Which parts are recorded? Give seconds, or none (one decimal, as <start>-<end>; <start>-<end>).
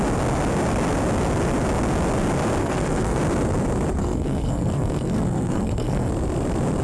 0.0-2.6; 3.2-4.0; 6.1-6.8